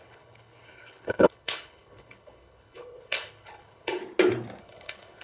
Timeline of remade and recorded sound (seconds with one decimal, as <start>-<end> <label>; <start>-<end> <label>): 0.0-4.0 remade; 4.0-4.6 recorded; 4.6-5.2 remade